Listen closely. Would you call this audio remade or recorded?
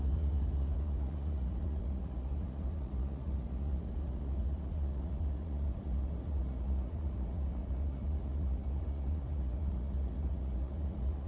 remade